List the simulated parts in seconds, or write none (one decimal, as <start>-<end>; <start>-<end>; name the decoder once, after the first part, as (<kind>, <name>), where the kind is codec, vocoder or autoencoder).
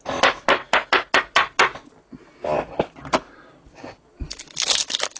none